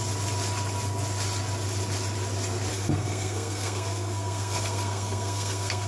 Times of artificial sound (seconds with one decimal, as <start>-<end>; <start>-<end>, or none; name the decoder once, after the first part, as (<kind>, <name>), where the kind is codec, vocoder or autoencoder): 2.7-5.9 (codec, SNAC)